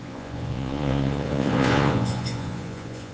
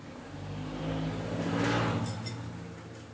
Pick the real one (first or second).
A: second